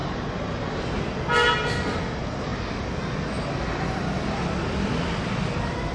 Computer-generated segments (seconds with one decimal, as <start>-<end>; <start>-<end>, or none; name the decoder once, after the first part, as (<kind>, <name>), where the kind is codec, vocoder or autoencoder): 0.0-0.8 (vocoder, BigVGAN v2)